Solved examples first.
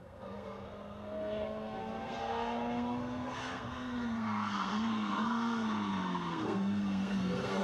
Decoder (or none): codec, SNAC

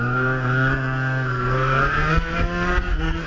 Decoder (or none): codec, SNAC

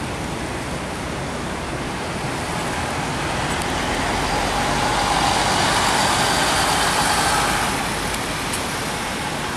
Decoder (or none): none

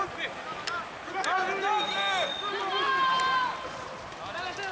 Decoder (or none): none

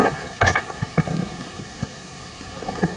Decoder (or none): codec, SNAC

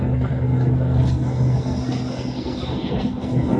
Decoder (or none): codec, SNAC